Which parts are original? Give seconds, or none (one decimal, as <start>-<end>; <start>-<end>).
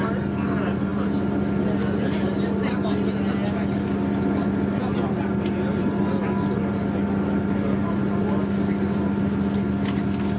0.0-10.4